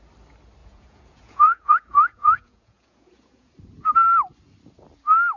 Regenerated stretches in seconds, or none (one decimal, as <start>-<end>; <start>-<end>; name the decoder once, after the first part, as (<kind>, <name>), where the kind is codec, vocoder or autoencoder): 0.6-3.5 (vocoder, Vocos)